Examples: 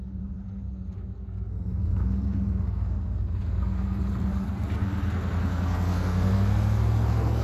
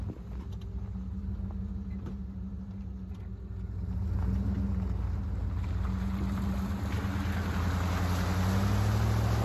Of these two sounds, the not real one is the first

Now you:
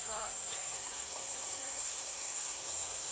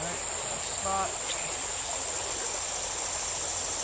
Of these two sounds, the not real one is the first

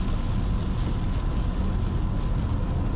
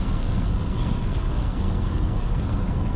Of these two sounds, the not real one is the second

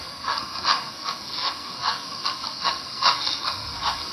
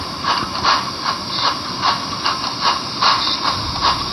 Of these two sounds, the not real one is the first